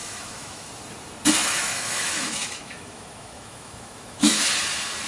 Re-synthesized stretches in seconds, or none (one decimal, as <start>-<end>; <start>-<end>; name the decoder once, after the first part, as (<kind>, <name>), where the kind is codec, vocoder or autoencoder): 0.0-0.7 (autoencoder, DAC-VAE); 1.4-4.5